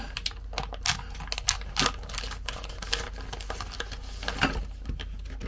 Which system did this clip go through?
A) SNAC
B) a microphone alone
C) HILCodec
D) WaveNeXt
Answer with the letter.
B